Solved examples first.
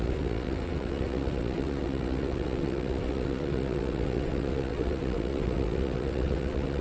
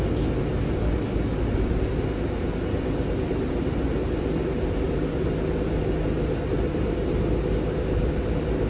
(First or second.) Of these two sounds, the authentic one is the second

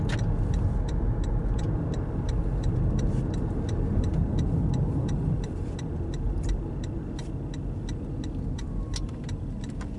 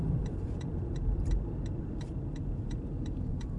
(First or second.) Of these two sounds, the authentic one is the first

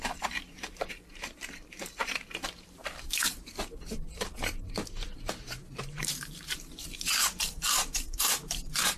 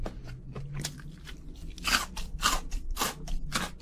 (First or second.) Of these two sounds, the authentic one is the second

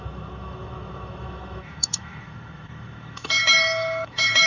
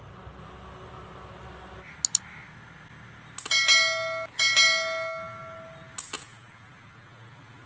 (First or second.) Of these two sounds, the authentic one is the second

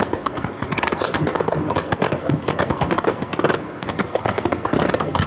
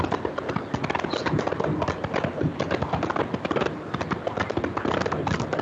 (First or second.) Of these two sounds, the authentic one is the second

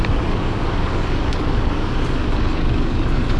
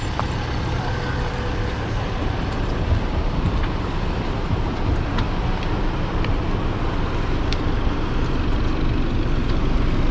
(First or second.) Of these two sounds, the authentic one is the second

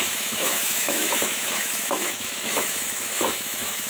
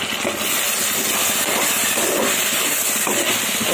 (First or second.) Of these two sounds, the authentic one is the second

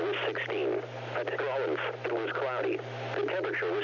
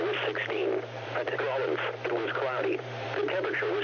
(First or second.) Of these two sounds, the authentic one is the first